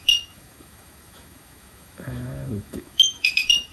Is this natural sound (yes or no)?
no